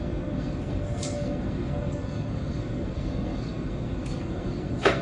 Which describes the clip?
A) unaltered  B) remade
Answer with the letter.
B